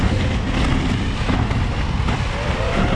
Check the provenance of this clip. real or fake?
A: real